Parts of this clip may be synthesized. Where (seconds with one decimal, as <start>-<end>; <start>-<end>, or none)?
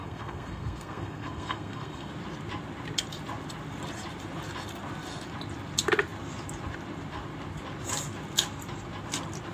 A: 0.0-2.1